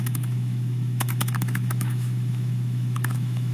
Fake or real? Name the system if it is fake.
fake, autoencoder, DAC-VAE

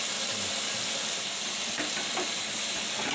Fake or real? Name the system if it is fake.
real